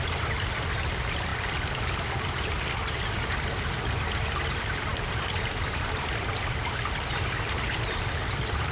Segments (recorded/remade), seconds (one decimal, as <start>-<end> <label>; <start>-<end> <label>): 0.0-8.7 remade